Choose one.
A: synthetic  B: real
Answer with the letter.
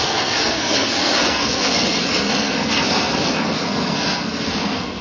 A